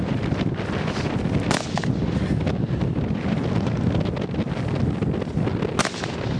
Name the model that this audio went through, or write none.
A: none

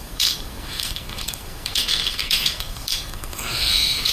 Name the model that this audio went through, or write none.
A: codec, SNAC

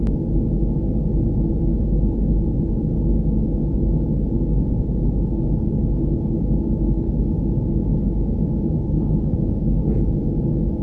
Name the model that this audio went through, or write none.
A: none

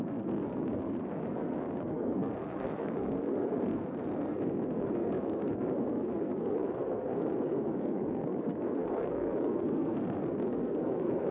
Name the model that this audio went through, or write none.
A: codec, SNAC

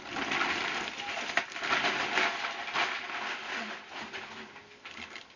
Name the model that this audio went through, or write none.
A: none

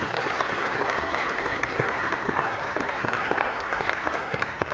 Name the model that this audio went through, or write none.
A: codec, SNAC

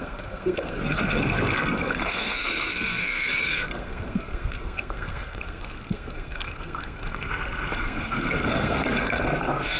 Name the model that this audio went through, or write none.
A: codec, SNAC